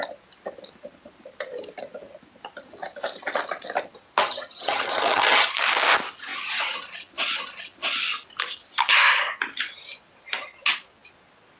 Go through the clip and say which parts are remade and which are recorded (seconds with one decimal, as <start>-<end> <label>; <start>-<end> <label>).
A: 0.0-4.2 recorded; 4.2-5.5 remade; 5.5-11.6 recorded